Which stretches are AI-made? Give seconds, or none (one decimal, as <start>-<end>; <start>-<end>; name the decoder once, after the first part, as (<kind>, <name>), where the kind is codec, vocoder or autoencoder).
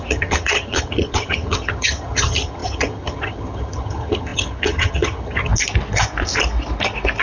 0.0-5.5 (vocoder, HiFi-GAN)